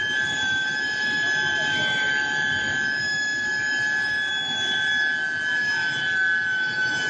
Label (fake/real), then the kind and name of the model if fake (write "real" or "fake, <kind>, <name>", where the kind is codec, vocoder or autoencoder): fake, autoencoder, DAC-VAE